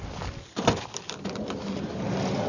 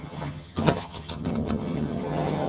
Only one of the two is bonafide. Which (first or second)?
first